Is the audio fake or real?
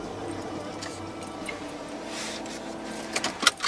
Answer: real